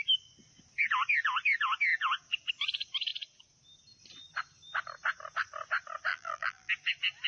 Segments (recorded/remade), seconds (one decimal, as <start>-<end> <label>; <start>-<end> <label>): 0.0-6.1 recorded; 6.1-6.7 remade; 6.7-7.3 recorded